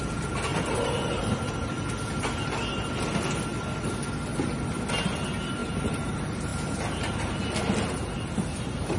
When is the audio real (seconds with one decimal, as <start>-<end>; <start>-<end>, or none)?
0.0-0.5; 1.2-9.0

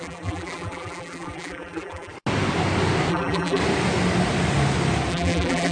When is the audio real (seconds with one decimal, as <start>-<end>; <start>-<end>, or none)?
2.1-3.1; 3.6-5.1

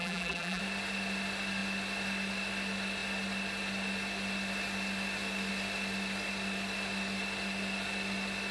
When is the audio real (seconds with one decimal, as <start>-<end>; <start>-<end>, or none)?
0.6-8.5

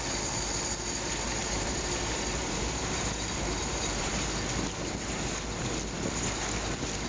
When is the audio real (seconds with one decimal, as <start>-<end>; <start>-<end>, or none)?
0.0-1.4; 4.1-7.1

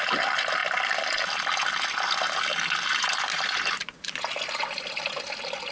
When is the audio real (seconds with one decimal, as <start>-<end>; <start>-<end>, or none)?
0.0-2.9; 4.7-5.7

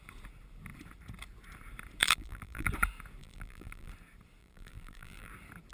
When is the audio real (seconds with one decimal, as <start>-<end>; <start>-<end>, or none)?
0.0-2.0; 2.7-3.2; 3.9-4.4; 5.3-5.7